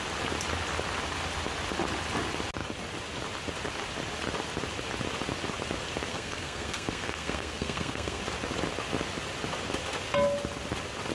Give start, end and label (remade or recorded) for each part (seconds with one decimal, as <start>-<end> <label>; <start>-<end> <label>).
0.0-6.1 recorded; 6.1-8.2 remade; 8.2-11.1 recorded